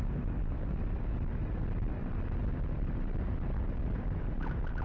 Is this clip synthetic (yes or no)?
no